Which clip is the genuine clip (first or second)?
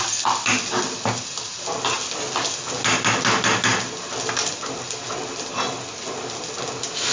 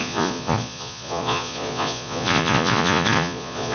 first